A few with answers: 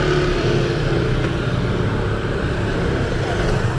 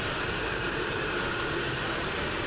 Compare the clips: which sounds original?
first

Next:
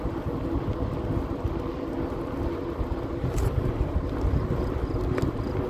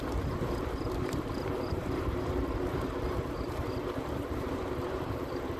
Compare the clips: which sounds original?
first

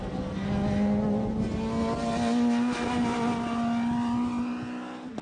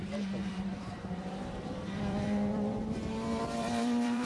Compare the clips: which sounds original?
first